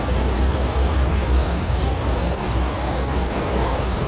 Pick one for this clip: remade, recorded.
remade